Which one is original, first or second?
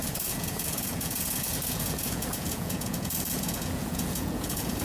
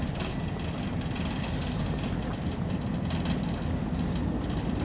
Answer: second